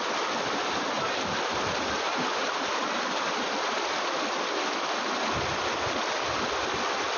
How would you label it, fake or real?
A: real